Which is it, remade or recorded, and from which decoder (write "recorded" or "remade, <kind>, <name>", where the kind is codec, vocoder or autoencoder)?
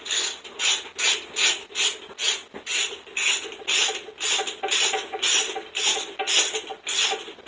recorded